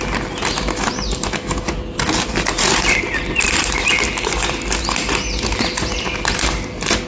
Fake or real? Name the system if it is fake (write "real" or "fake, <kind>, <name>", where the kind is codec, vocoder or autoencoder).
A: real